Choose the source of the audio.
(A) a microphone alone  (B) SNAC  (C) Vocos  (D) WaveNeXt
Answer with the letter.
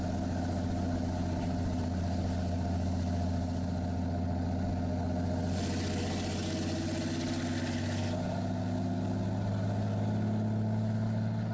A